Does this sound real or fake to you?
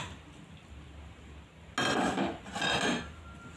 real